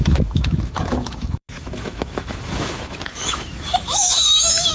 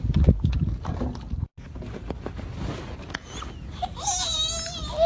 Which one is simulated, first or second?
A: first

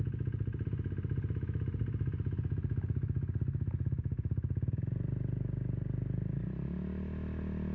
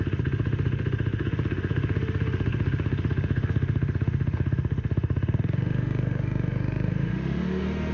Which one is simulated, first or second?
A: second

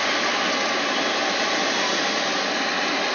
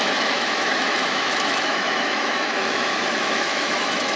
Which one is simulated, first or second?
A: second